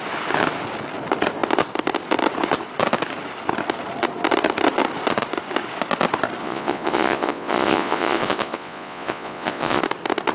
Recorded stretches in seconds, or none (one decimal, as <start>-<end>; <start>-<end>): 0.0-6.4; 9.8-10.3